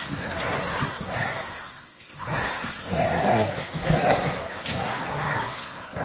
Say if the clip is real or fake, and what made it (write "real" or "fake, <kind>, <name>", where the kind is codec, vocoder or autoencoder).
fake, codec, SNAC